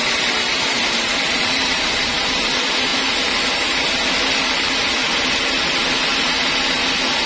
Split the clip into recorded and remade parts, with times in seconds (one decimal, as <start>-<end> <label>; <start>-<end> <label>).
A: 0.0-7.3 recorded